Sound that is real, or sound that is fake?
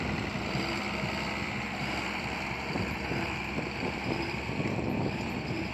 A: fake